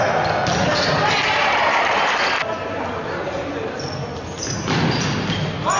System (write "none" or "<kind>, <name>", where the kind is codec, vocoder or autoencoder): none